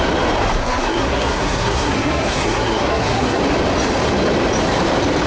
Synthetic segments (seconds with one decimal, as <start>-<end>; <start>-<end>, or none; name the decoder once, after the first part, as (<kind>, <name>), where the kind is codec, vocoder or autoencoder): 0.6-3.4 (codec, SNAC)

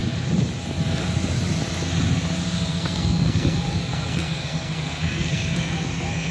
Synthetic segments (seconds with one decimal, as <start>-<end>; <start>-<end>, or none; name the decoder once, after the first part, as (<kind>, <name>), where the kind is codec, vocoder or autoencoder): 2.7-6.3 (codec, SNAC)

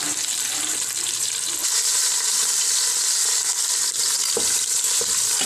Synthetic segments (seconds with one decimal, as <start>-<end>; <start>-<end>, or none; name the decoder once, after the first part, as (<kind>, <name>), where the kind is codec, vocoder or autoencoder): none

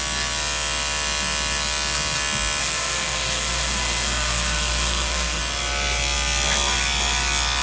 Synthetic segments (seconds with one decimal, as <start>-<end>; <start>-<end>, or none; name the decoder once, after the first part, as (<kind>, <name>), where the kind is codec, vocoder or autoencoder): 2.6-5.4 (codec, SNAC)